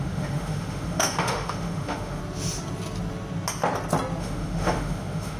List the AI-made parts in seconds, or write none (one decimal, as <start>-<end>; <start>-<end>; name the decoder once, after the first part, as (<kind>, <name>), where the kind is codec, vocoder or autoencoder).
0.0-2.2 (autoencoder, DAC-VAE); 4.2-5.4